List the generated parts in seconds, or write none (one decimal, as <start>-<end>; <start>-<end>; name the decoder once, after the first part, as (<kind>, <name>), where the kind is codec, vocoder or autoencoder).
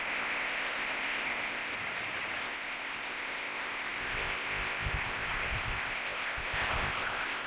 0.0-1.7 (codec, ZipCodec); 2.4-7.5